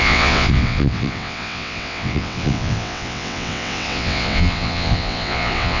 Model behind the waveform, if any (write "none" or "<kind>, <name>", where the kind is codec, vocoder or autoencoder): vocoder, WaveNeXt